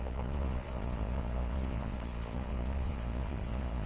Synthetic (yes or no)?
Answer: yes